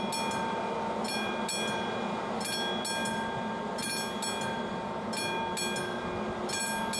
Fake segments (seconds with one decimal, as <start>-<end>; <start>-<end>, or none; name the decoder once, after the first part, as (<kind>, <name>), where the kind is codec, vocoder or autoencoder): none